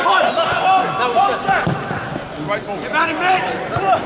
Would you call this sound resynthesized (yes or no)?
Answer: no